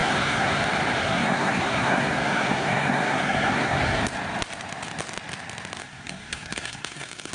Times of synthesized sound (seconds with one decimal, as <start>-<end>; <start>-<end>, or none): 0.0-0.6; 1.0-4.0; 5.8-7.3